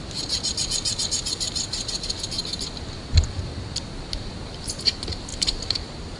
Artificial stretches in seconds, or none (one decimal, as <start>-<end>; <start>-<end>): 0.0-2.4; 4.3-6.2